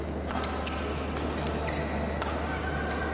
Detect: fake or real real